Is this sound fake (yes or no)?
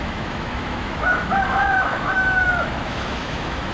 yes